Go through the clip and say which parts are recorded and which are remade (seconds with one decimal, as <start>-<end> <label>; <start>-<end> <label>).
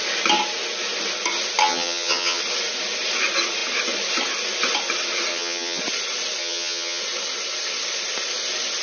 0.0-1.6 recorded; 1.6-2.4 remade; 2.4-5.3 recorded; 5.3-5.8 remade; 5.8-6.4 recorded; 6.4-7.0 remade; 7.0-8.8 recorded